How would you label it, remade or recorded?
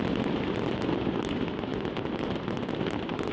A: recorded